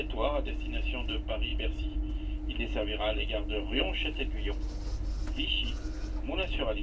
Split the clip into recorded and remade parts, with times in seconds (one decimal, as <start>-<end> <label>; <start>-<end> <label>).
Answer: 0.0-1.5 recorded; 1.5-2.1 remade; 2.1-6.8 recorded